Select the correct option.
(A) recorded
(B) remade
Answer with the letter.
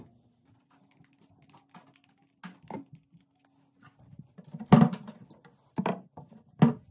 A